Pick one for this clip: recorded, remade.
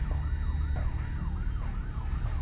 recorded